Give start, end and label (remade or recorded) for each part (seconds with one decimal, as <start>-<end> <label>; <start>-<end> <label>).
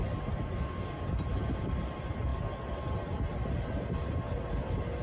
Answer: 0.0-5.0 recorded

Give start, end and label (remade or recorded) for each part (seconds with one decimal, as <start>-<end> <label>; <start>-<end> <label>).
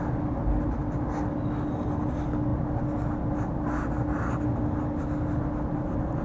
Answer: 0.0-6.2 recorded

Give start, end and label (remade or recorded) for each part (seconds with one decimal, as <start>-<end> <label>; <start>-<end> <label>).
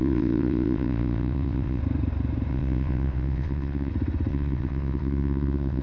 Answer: 0.0-1.8 remade; 1.8-2.5 recorded; 2.5-3.9 remade; 3.9-4.3 recorded; 4.3-5.8 remade